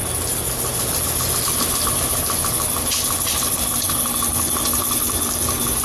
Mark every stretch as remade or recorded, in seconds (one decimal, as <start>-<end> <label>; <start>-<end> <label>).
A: 0.0-5.8 recorded